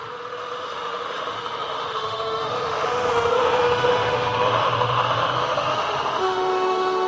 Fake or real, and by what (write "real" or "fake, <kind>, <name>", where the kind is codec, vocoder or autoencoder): fake, autoencoder, DAC-VAE